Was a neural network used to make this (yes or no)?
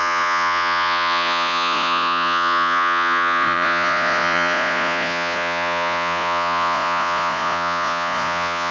yes